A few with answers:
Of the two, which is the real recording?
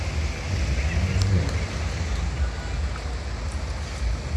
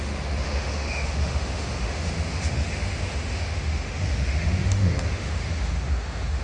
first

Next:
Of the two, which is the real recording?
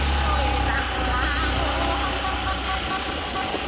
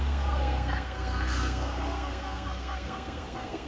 first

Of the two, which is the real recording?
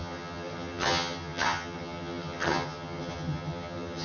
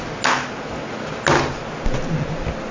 second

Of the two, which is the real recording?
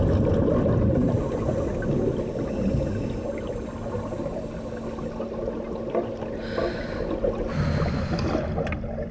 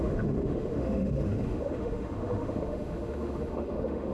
first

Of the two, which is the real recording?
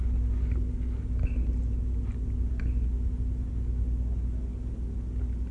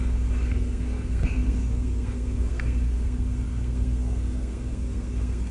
first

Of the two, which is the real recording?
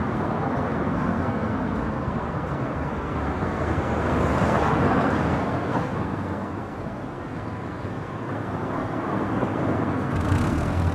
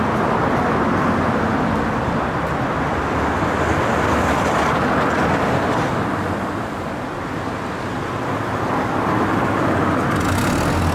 second